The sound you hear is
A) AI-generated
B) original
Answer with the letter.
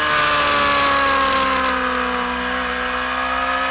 B